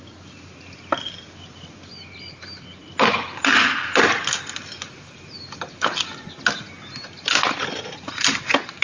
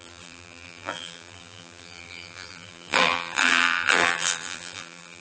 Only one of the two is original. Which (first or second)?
first